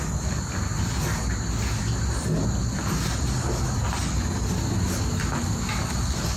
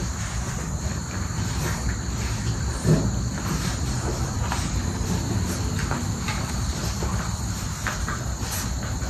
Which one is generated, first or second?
second